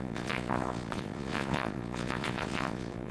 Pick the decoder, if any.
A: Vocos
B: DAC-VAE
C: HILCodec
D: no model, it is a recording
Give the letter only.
A